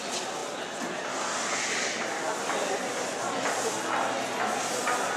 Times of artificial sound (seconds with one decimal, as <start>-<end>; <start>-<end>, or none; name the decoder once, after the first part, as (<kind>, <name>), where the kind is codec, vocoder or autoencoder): none